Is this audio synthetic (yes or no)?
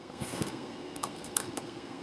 yes